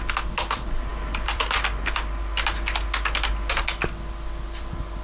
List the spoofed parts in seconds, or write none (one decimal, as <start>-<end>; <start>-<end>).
0.9-1.4